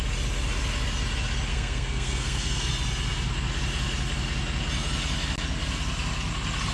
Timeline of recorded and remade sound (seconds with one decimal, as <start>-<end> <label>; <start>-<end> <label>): 0.0-1.5 recorded; 1.5-2.7 remade; 2.7-6.7 recorded